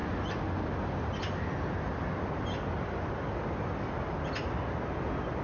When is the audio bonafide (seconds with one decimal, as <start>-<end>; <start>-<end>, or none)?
0.0-5.4